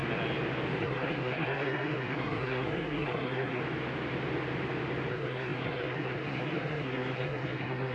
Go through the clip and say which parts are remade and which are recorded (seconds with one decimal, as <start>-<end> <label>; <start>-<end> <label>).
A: 0.0-0.8 recorded; 0.8-3.6 remade; 3.6-5.1 recorded; 5.1-7.9 remade